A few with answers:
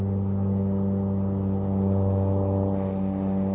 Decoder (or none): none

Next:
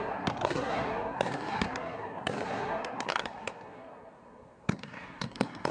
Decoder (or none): codec, SNAC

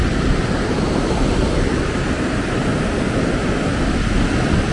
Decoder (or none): none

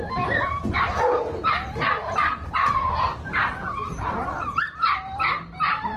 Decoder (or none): vocoder, BigVGAN v2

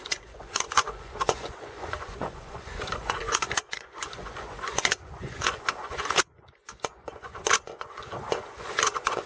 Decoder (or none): vocoder, Vocos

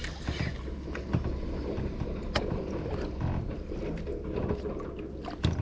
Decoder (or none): none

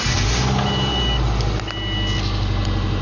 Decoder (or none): none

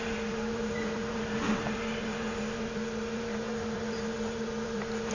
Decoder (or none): vocoder, BigVGAN v2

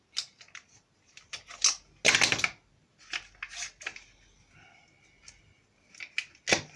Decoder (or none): none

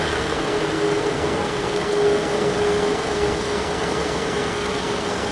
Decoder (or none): codec, SNAC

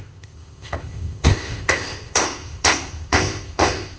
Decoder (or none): codec, ZipCodec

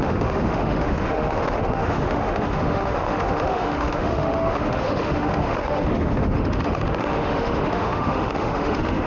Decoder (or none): autoencoder, DAC-VAE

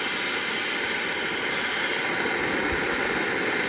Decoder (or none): none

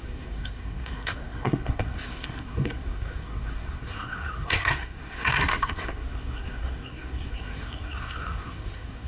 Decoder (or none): codec, SNAC